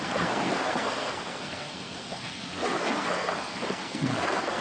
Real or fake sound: fake